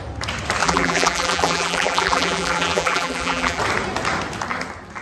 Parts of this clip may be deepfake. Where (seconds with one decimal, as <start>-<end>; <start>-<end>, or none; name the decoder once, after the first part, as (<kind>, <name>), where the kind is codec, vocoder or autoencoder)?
0.6-3.6 (vocoder, BigVGAN v2)